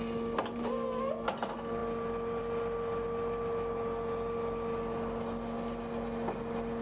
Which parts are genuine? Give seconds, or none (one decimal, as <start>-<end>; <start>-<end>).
0.0-6.8

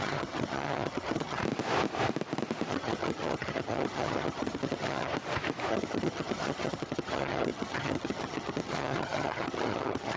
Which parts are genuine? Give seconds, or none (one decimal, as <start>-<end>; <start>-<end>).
1.4-2.7; 5.1-5.7

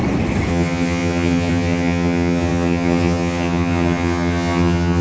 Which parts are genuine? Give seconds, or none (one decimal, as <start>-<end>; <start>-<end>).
0.0-0.5